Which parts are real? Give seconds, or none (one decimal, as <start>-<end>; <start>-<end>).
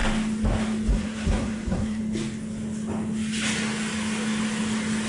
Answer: 0.0-0.9; 2.0-5.1